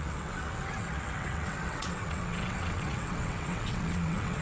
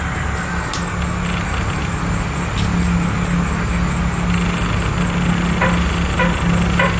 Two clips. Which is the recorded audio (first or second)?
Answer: second